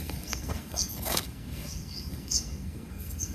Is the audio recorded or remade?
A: remade